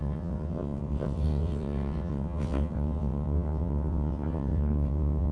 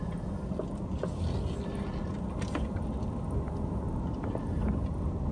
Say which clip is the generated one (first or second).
first